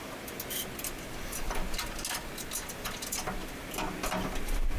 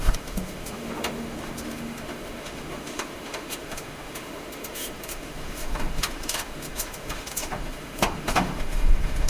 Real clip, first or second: first